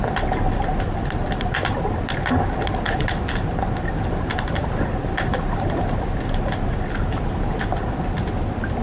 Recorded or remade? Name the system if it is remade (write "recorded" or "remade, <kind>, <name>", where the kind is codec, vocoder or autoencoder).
recorded